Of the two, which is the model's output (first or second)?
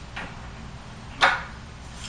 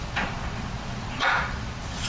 second